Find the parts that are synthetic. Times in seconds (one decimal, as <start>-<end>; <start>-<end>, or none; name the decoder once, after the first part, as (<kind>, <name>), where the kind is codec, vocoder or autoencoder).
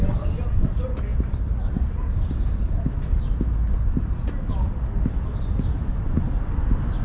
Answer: none